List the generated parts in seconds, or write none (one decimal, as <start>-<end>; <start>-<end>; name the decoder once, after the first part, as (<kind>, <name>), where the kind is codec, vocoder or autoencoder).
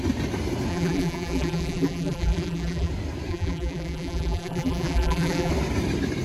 0.7-2.9 (vocoder, BigVGAN v2); 3.3-5.5